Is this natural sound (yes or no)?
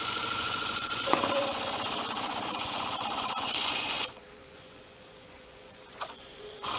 no